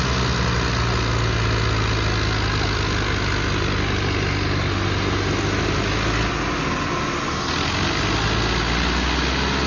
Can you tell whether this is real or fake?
real